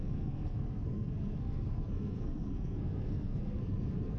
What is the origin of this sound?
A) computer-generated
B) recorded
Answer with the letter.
A